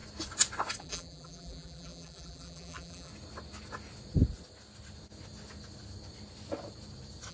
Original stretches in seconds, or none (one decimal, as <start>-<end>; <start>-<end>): 0.0-0.8; 3.1-7.3